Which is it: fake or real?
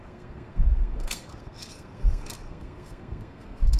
fake